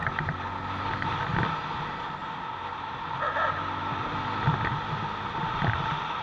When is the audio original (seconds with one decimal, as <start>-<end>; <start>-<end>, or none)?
0.0-6.2

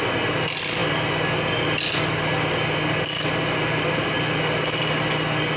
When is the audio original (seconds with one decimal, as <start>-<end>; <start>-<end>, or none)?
0.0-5.6

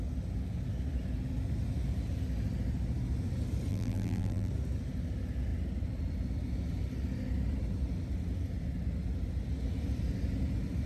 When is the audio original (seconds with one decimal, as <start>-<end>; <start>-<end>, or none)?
0.0-3.7; 4.5-10.9

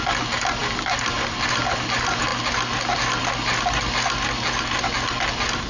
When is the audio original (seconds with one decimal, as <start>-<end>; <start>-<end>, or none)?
0.0-5.7

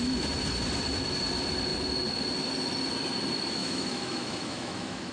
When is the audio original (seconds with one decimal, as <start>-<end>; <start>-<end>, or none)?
0.0-3.6

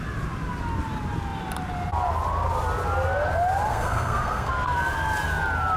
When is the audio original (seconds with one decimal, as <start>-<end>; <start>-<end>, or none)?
0.0-3.7; 4.5-5.8

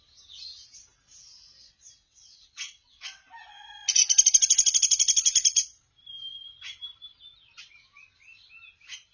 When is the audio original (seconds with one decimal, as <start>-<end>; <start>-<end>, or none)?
0.0-1.6; 3.3-9.1